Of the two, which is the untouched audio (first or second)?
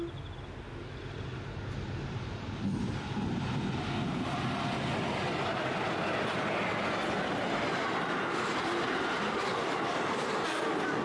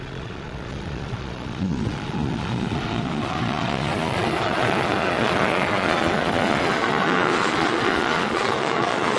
first